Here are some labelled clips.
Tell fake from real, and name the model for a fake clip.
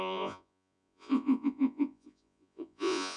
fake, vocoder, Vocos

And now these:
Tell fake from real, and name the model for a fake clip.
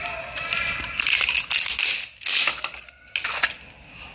real